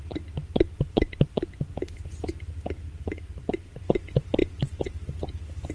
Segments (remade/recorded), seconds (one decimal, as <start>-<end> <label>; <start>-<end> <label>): 0.0-4.4 recorded; 4.4-5.2 remade; 5.2-5.7 recorded